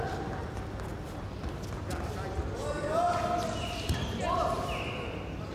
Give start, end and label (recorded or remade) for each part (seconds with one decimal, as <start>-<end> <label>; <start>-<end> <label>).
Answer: 0.0-5.5 recorded